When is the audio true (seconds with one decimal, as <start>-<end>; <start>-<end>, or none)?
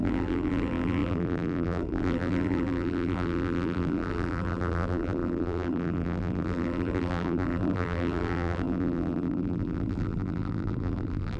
none